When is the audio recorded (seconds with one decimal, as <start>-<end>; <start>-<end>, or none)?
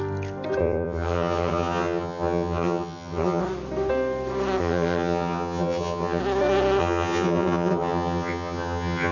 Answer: 0.0-0.6; 3.4-4.6; 6.2-6.8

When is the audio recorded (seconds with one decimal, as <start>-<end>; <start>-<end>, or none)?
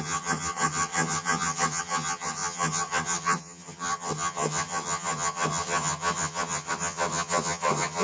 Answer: none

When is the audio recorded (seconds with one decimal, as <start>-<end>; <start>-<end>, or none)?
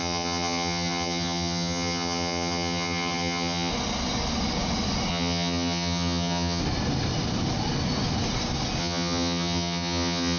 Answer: 3.7-5.1; 6.6-8.8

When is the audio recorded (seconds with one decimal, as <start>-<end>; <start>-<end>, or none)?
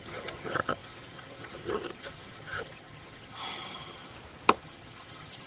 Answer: 4.1-4.6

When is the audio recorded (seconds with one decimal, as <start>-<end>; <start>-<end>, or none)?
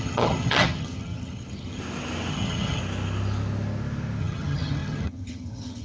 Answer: 1.8-2.3; 2.8-4.2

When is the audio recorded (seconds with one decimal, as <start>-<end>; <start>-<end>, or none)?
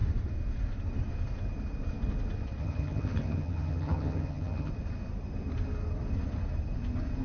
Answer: 0.0-2.6; 4.7-7.2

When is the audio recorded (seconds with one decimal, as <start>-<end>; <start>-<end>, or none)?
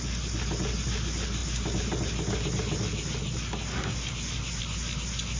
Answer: 0.0-5.4